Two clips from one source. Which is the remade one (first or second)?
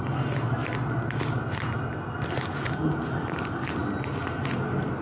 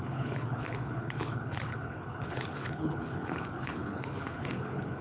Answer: second